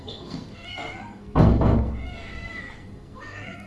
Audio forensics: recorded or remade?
remade